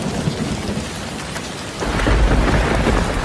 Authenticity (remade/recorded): recorded